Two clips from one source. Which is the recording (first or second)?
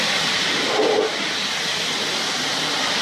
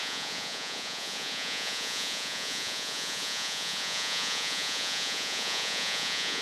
first